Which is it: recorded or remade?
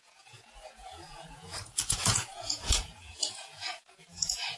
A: remade